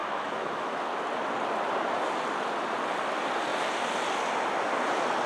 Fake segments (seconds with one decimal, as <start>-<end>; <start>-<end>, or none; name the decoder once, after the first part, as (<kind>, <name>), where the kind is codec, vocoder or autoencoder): 0.0-0.9 (autoencoder, DAC-VAE)